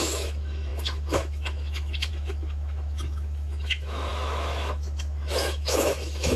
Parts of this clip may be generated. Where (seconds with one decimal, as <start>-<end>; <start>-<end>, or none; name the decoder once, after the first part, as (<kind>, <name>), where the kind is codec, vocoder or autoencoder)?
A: 0.0-6.4 (autoencoder, DAC-VAE)

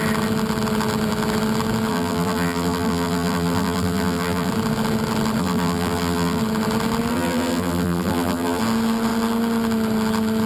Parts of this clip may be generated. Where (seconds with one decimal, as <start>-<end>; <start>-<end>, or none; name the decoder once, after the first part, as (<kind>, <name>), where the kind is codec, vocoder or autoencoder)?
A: 1.9-4.5 (vocoder, BigVGAN v2); 5.4-6.4; 7.1-8.6

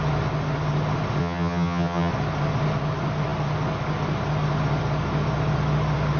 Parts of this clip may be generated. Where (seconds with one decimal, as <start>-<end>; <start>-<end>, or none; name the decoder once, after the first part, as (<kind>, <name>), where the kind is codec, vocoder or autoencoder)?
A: 1.2-2.1 (vocoder, HiFi-GAN)

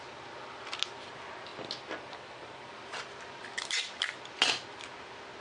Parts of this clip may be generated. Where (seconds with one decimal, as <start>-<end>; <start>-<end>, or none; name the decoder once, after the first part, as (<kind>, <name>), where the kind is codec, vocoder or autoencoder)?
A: none

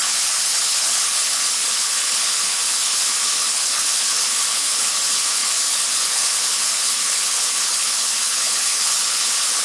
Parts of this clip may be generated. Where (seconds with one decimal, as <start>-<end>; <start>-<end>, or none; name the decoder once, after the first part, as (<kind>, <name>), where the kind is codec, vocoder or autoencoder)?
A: 0.0-9.6 (codec, HILCodec)

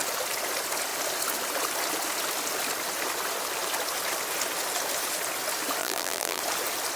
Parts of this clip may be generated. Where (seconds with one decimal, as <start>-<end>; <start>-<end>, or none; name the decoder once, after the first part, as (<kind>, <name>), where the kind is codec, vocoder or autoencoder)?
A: 5.8-6.4 (vocoder, BigVGAN v2)

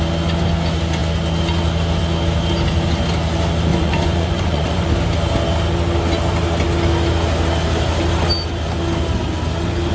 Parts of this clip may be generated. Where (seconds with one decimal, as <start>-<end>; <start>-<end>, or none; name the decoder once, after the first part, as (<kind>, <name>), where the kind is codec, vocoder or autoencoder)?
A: 3.7-4.9 (vocoder, Vocos)

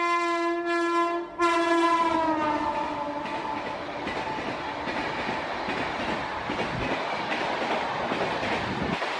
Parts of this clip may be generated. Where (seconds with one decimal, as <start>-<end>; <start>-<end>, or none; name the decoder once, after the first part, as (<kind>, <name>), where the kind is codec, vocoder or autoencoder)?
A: none